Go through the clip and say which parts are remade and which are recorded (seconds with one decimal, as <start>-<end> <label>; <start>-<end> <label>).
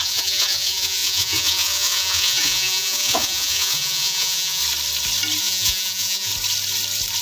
0.0-4.6 remade; 4.6-5.4 recorded; 5.4-6.3 remade; 6.3-7.2 recorded